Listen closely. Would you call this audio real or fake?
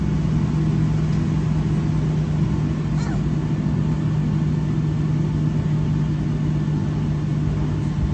real